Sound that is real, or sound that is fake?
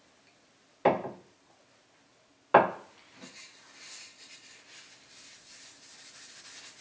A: real